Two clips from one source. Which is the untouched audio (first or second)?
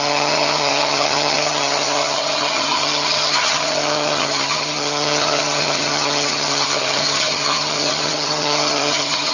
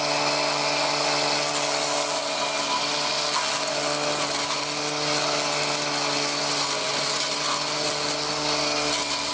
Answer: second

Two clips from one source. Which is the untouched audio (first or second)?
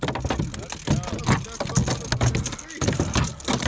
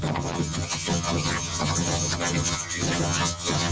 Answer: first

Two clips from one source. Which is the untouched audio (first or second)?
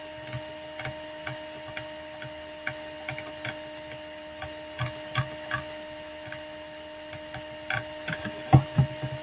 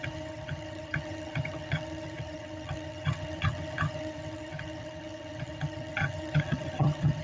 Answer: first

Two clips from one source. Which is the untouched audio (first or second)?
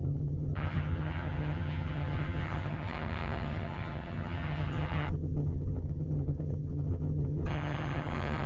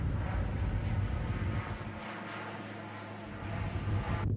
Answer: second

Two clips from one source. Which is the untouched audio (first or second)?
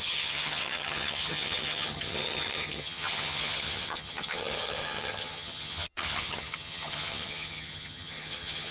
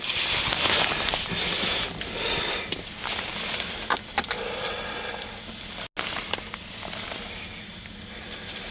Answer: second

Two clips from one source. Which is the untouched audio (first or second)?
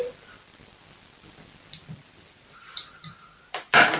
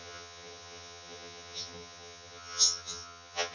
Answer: first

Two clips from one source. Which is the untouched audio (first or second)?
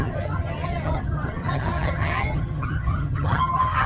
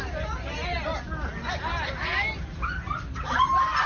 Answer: second